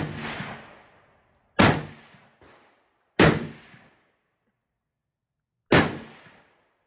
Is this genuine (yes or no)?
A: yes